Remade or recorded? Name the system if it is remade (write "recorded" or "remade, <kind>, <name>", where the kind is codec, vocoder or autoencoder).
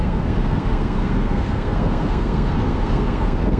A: remade, codec, SNAC